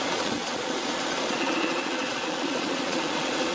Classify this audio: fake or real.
fake